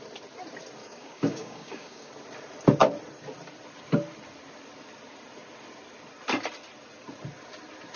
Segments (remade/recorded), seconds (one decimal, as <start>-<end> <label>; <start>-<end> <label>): 0.0-0.8 recorded; 0.8-2.1 remade; 2.1-8.0 recorded